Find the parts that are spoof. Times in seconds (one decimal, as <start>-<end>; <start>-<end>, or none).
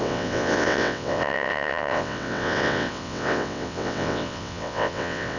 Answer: 0.0-5.4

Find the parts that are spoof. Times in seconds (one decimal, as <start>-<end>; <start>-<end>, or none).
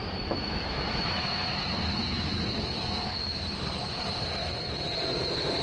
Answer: 0.0-3.4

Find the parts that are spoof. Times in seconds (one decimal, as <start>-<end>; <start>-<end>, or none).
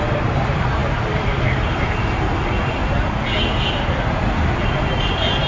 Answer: 0.0-2.8; 3.7-5.5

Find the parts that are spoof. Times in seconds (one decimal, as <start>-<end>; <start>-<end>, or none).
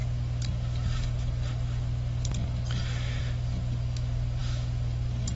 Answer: none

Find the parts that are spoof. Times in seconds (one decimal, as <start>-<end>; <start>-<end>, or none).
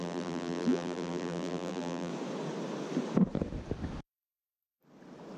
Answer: 0.0-2.1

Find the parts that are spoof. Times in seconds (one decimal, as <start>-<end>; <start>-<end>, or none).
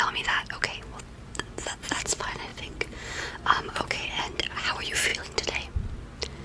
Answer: 0.9-2.0; 2.5-4.1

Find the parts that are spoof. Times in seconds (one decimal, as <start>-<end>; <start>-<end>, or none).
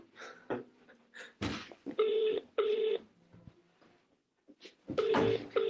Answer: 1.5-2.9; 4.2-5.2